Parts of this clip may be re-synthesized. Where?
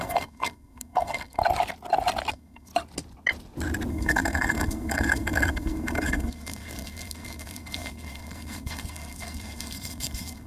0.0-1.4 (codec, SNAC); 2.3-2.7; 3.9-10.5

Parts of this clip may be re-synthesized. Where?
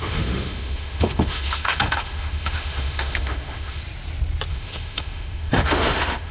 0.0-3.8 (autoencoder, DAC-VAE); 4.5-6.3